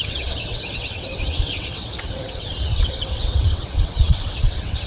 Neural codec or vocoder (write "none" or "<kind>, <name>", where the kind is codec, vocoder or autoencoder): vocoder, WaveNeXt